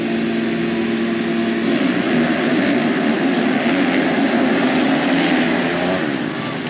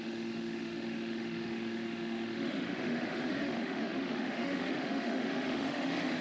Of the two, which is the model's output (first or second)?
second